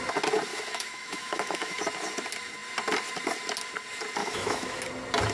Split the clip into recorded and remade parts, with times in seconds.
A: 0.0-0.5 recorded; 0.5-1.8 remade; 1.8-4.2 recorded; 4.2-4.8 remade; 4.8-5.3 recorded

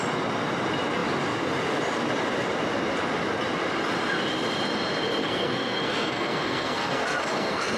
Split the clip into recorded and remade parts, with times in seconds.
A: 0.0-5.2 recorded; 5.2-7.8 remade

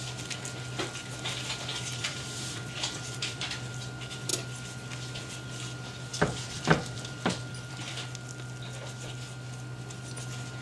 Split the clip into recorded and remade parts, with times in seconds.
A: 0.0-1.7 recorded; 1.7-3.7 remade; 3.7-6.1 recorded; 6.1-7.9 remade; 7.9-10.6 recorded

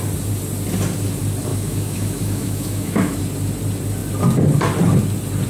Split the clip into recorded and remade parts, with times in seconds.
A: 0.0-1.5 recorded; 1.5-3.2 remade; 3.2-5.5 recorded

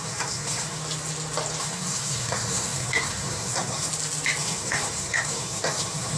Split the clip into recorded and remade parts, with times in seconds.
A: 0.0-0.8 remade; 0.8-1.6 recorded; 1.6-3.9 remade; 3.9-4.4 recorded; 4.4-6.2 remade